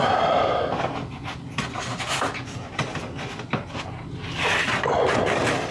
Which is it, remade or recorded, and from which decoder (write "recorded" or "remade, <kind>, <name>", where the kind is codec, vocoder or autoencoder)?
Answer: recorded